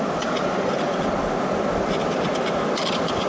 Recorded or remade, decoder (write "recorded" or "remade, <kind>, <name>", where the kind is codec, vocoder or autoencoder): recorded